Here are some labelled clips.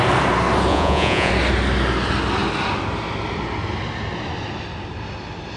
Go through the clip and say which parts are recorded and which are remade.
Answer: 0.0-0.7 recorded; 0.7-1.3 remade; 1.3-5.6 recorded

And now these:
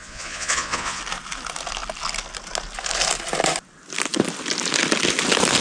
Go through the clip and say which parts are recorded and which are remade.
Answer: 0.0-1.0 remade; 1.0-5.6 recorded